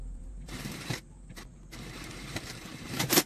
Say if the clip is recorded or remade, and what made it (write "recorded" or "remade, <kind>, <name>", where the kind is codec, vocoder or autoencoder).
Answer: remade, vocoder, BigVGAN v2